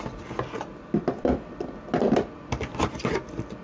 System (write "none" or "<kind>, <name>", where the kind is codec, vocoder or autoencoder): none